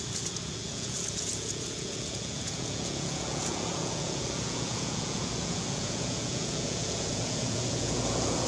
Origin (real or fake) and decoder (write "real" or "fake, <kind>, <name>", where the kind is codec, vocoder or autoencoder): fake, vocoder, Vocos